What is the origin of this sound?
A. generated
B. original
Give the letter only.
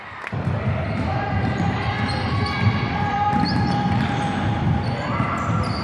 B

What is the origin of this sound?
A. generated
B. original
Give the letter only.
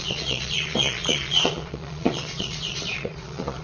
A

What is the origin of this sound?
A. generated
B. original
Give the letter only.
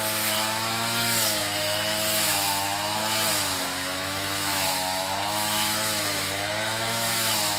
A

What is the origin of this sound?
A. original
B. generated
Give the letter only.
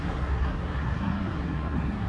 B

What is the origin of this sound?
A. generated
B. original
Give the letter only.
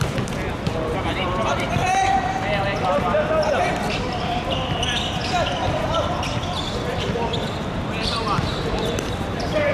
A